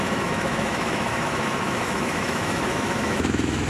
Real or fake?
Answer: fake